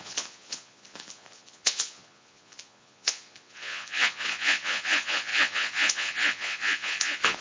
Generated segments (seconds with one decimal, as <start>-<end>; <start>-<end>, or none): 0.0-7.4